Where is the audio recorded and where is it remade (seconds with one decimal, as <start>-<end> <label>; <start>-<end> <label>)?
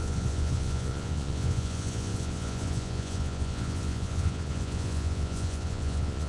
0.0-6.3 remade